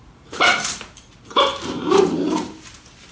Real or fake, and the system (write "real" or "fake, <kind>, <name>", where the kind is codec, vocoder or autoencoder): fake, vocoder, BigVGAN v2